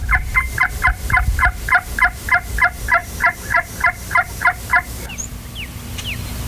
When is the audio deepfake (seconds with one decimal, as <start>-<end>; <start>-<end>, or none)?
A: 0.0-0.7; 3.0-4.3